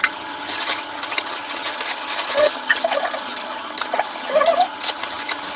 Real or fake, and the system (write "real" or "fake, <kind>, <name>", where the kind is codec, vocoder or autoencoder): fake, vocoder, HiFi-GAN